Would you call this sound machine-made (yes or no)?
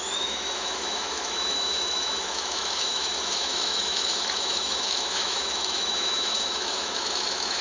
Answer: yes